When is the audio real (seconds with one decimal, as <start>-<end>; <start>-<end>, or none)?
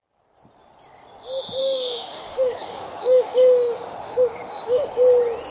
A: 0.0-1.6; 4.8-5.5